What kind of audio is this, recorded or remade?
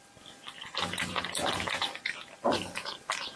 recorded